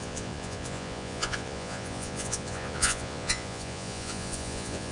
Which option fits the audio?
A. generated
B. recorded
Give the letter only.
A